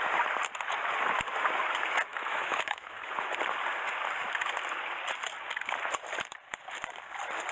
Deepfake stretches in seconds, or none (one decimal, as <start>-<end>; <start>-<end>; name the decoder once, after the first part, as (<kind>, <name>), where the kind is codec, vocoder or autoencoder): 2.1-3.1 (autoencoder, DAC-VAE)